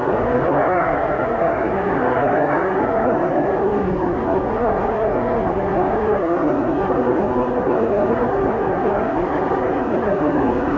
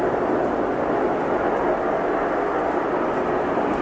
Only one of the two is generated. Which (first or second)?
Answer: first